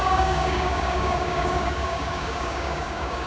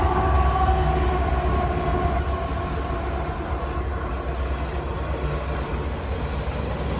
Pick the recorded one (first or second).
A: second